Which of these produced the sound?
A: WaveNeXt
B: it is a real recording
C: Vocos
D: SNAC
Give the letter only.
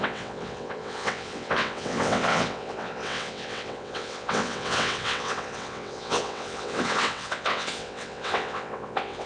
A